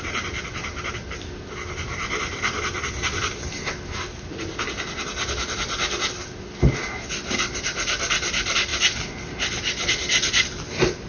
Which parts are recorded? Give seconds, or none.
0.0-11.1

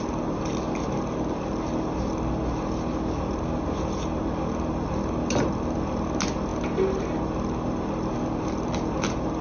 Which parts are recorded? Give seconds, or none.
0.0-9.4

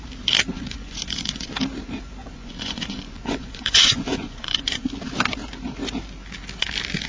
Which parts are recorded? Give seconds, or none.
0.0-0.5; 1.5-2.2; 4.8-7.1

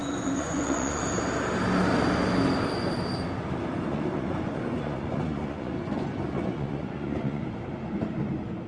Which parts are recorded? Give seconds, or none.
1.0-3.7; 7.4-8.7